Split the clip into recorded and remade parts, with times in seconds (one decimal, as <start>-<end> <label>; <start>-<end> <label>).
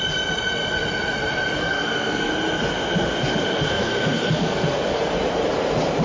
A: 0.0-1.6 recorded; 1.6-2.3 remade; 2.3-3.7 recorded; 3.7-4.8 remade; 4.8-6.0 recorded